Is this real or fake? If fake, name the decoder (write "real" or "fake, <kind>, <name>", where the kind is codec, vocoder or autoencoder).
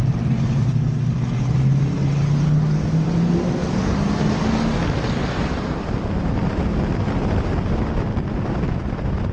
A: real